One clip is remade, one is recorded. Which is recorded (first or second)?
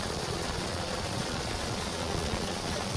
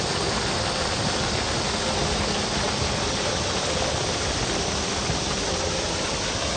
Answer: second